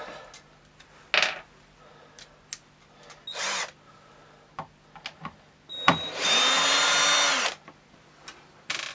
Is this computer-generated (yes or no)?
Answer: no